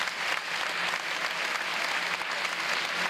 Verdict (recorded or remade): recorded